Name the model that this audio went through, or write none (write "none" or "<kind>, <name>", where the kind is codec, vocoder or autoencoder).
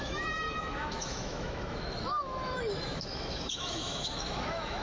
autoencoder, DAC-VAE